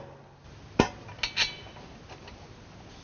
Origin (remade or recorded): recorded